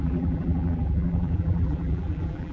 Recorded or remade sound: remade